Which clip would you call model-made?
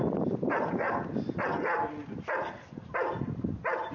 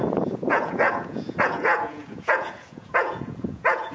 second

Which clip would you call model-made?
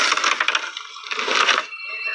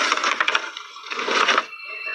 second